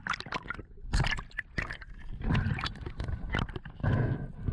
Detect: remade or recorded recorded